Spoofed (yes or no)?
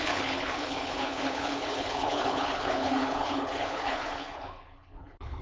yes